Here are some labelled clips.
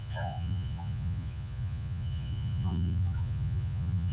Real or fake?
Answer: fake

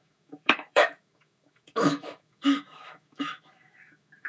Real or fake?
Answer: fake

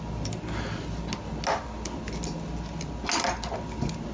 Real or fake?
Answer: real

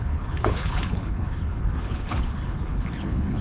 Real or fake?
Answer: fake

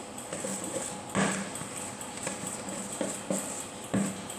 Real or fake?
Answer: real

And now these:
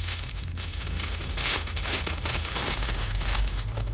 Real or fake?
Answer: fake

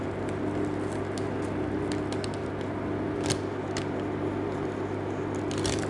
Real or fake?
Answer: real